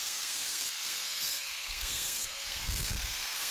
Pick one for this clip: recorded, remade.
remade